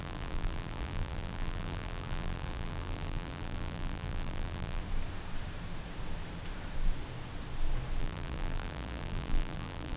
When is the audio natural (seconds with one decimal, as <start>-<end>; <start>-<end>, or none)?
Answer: 4.8-8.0